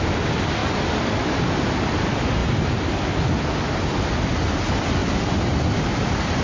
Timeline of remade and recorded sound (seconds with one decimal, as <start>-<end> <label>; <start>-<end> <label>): 0.0-6.4 recorded